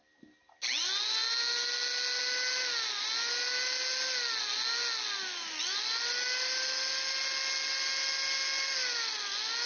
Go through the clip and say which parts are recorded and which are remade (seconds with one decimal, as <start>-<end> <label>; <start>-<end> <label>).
0.0-9.7 recorded